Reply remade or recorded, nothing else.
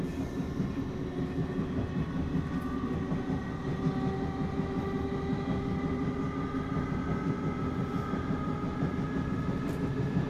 recorded